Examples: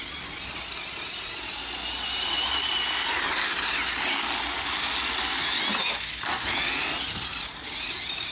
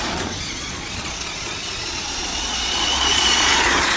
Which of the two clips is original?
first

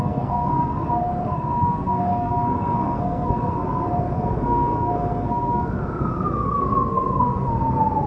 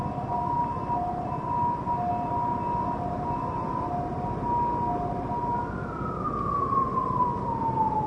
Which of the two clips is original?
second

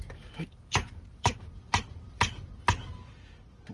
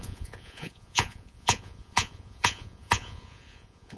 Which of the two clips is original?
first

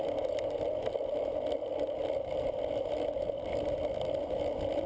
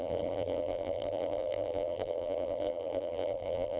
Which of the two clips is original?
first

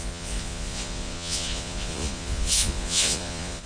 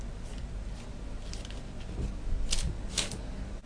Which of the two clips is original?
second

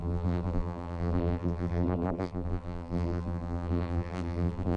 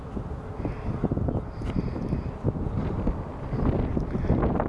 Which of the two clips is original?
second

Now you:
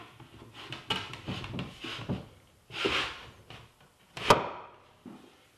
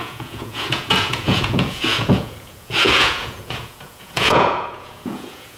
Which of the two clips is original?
first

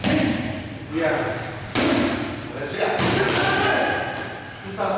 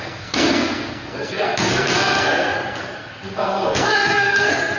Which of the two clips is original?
first